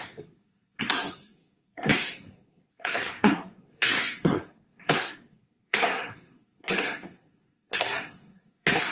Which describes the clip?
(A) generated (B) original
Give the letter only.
A